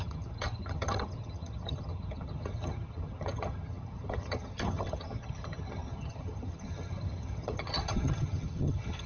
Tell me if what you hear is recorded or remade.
remade